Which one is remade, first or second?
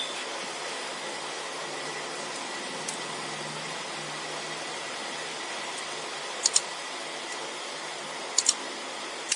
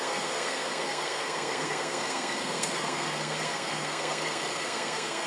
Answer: second